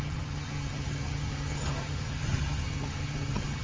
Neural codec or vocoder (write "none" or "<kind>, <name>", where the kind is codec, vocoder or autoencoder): vocoder, HiFi-GAN